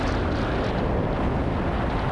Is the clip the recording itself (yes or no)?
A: yes